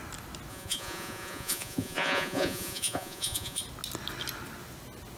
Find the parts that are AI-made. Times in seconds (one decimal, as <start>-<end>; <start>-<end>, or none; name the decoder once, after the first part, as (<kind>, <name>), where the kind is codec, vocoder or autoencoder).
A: 0.5-3.6 (vocoder, Vocos)